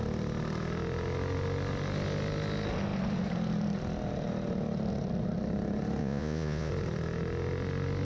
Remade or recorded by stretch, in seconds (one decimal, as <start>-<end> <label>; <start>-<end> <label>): 0.0-6.0 recorded; 6.0-6.7 remade; 6.7-8.0 recorded